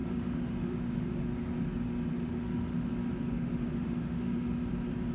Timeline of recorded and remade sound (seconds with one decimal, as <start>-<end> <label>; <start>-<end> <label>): 0.0-1.2 remade; 1.2-2.1 recorded; 2.1-2.9 remade; 2.9-3.3 recorded; 3.3-4.6 remade; 4.6-5.1 recorded